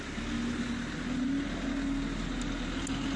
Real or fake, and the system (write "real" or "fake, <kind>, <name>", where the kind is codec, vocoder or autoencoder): real